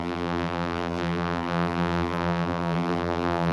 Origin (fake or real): fake